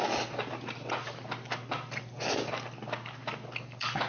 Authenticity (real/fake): real